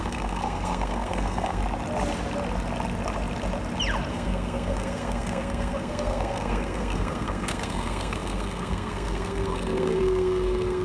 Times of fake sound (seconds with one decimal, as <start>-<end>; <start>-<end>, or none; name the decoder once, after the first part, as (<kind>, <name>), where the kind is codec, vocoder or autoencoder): 0.0-1.6 (codec, SNAC); 4.1-10.8